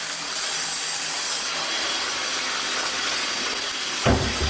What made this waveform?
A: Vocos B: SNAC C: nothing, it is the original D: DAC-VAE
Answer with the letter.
C